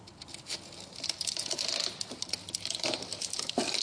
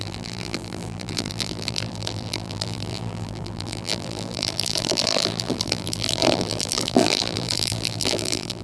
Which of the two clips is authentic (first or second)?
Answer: first